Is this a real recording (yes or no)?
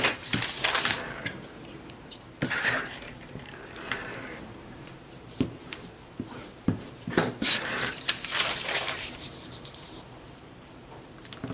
no